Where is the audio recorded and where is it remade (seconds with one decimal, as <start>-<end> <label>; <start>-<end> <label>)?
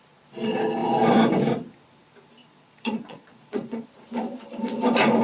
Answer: 0.0-2.4 recorded; 2.4-3.9 remade; 3.9-5.2 recorded